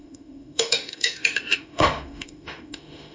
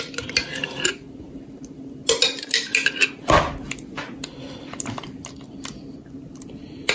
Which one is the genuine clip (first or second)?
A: second